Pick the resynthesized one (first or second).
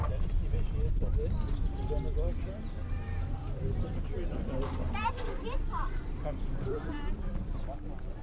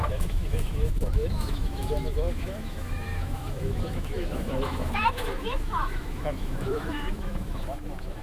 second